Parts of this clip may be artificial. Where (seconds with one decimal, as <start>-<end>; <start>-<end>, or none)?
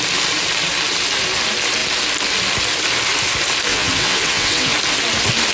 3.7-4.7